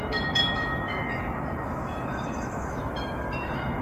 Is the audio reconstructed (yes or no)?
yes